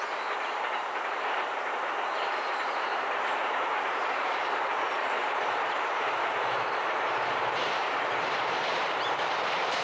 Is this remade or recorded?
remade